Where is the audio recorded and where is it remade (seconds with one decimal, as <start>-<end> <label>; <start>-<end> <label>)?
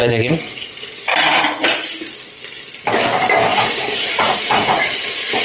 0.0-1.1 remade; 1.1-3.5 recorded; 3.5-4.9 remade; 4.9-5.4 recorded